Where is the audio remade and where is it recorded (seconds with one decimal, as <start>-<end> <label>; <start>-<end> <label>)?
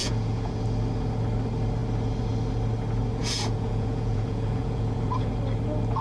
0.0-0.6 remade; 0.6-3.2 recorded; 3.2-5.3 remade; 5.3-6.0 recorded